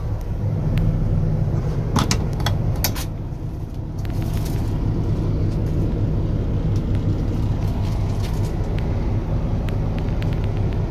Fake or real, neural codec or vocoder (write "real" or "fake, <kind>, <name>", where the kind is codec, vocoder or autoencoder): real